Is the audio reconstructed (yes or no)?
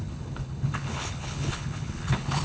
yes